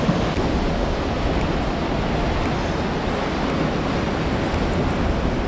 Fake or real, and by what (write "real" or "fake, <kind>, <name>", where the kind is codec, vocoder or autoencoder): real